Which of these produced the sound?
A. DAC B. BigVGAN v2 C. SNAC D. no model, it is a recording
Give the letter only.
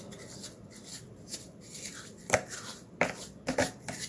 D